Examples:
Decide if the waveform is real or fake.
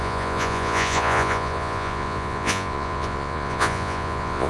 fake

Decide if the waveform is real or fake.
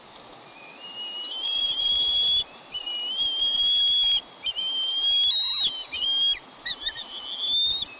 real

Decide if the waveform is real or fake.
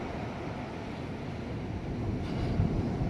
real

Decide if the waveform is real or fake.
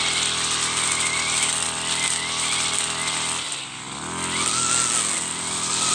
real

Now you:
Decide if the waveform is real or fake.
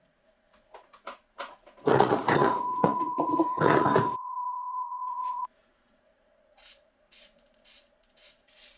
fake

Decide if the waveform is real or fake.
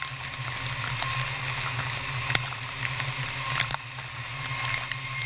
real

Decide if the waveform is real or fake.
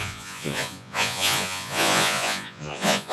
fake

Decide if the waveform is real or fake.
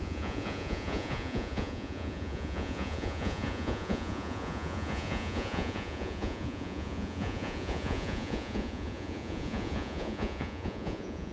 fake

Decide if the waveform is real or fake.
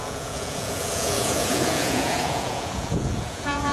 fake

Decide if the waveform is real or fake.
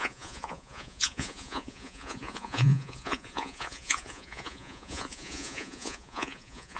fake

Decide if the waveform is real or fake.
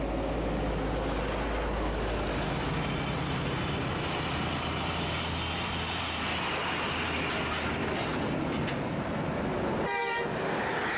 real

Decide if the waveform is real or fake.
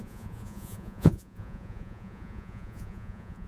fake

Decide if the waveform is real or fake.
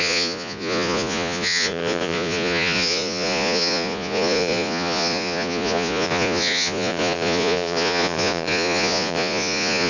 fake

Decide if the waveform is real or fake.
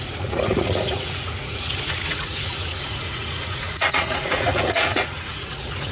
fake